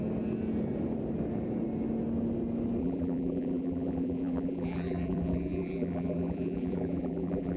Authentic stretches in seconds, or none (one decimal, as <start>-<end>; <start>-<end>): 0.0-2.8